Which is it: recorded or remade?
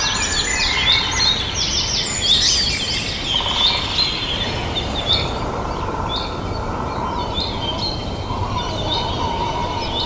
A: recorded